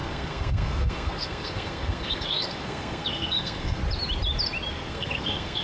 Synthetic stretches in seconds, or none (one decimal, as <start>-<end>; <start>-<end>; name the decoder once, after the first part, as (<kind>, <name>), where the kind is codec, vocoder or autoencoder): 0.0-3.8 (codec, SNAC); 4.7-5.6